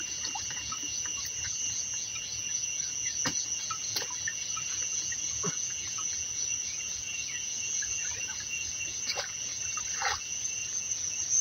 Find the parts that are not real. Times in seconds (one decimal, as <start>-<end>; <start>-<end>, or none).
0.0-9.5; 10.2-11.4